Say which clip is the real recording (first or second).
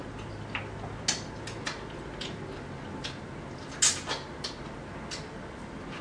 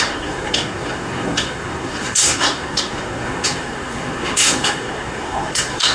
first